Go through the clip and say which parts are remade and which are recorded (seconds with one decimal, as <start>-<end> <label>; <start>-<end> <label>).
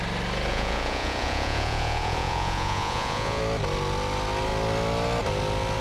0.0-0.5 recorded; 0.5-3.4 remade; 3.4-5.8 recorded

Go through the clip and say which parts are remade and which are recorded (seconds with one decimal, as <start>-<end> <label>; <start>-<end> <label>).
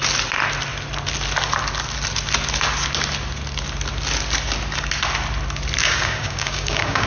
0.0-5.8 recorded; 5.8-7.1 remade